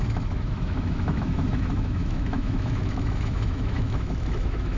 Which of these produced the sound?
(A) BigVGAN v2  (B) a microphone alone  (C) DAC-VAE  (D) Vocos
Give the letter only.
C